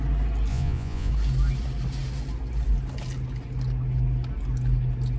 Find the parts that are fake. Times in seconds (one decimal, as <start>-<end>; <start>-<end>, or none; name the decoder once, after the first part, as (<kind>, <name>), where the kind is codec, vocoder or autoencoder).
0.5-1.1 (vocoder, Vocos)